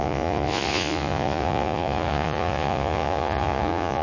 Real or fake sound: fake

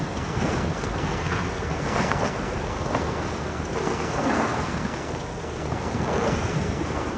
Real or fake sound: fake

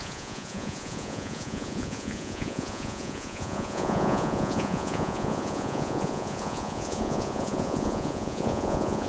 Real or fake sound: fake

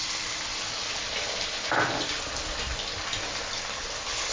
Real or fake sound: real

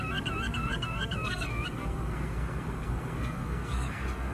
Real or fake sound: fake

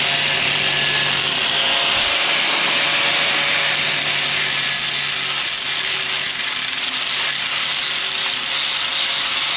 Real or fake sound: real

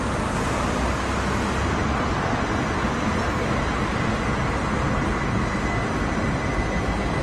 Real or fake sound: real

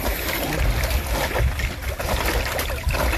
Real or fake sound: real